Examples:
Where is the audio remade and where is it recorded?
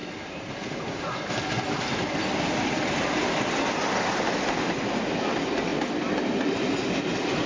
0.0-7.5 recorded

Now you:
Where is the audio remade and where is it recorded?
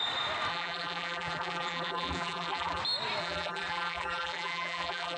0.0-0.5 recorded; 0.5-2.8 remade; 2.8-3.2 recorded; 3.2-5.2 remade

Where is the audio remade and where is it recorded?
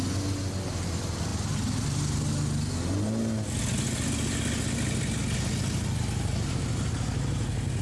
0.0-7.8 recorded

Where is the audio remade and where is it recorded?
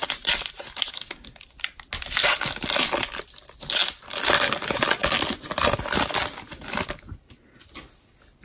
0.0-0.8 remade; 0.8-8.4 recorded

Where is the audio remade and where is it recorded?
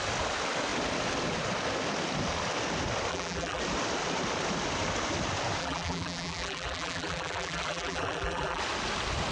0.0-3.1 recorded; 3.1-3.6 remade; 3.6-5.6 recorded; 5.6-8.6 remade; 8.6-9.3 recorded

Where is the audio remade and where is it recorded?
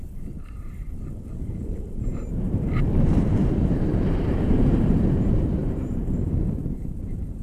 0.0-7.4 remade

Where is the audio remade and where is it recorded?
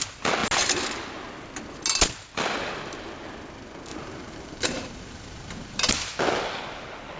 0.0-3.9 recorded; 3.9-5.9 remade; 5.9-7.2 recorded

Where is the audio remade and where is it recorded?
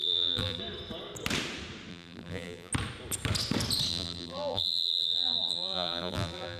0.0-0.6 remade; 0.6-1.9 recorded; 1.9-2.7 remade; 2.7-3.9 recorded; 3.9-6.6 remade